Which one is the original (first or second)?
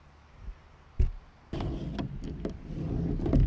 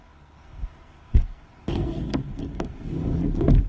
first